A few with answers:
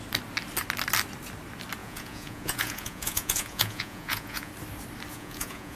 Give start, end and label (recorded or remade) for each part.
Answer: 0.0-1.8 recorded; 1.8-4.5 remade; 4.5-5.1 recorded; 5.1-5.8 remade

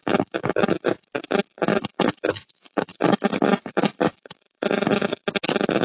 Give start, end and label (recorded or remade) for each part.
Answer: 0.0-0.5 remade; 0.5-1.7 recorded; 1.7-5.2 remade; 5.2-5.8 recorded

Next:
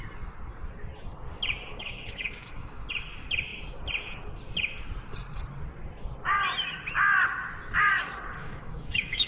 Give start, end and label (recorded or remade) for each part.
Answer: 0.0-1.7 recorded; 1.7-2.9 remade; 2.9-8.4 recorded; 8.4-9.3 remade

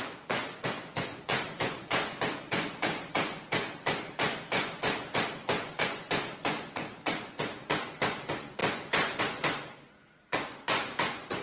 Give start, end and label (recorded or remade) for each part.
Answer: 0.0-11.4 remade

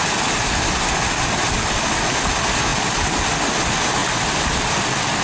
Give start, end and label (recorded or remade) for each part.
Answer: 0.0-1.9 remade; 1.9-4.0 recorded; 4.0-5.2 remade

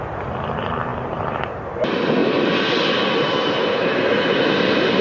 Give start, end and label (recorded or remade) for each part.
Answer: 0.0-0.9 recorded; 0.9-1.7 remade; 1.7-5.0 recorded